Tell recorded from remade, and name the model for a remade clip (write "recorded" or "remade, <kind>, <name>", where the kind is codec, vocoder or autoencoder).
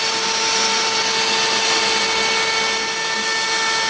recorded